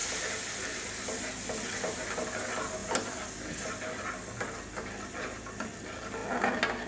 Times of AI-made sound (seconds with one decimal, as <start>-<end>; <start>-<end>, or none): none